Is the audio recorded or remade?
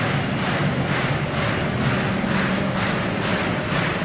recorded